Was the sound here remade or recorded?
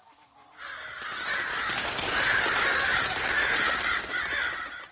recorded